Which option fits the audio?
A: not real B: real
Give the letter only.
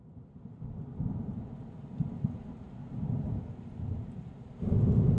B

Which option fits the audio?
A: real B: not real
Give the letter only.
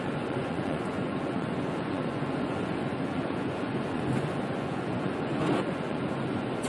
B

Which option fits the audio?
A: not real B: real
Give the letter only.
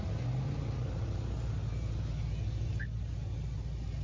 B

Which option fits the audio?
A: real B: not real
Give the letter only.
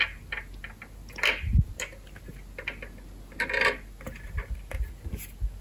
A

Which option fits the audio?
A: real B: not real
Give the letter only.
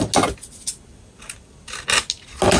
A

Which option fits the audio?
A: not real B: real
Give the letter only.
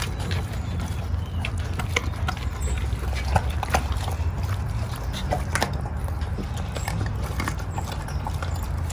B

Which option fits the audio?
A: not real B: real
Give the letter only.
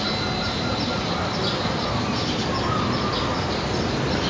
B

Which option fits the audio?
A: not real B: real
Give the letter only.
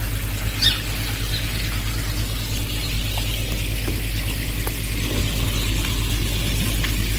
B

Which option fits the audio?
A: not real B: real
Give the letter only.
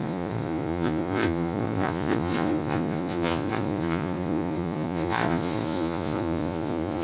A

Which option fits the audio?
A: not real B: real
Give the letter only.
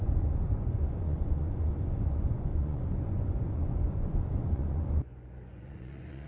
A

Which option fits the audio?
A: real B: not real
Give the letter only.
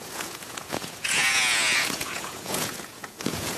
B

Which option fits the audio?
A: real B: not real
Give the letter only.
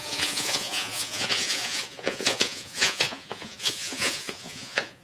B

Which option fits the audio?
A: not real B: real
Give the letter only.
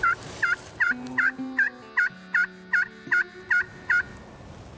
B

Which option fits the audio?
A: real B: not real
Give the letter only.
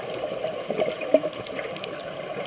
A